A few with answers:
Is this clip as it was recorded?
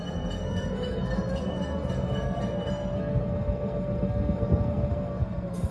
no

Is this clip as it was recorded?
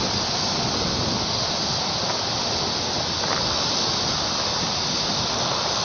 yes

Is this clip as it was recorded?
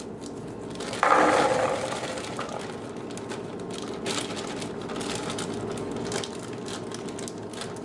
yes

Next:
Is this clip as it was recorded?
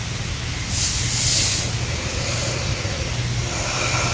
yes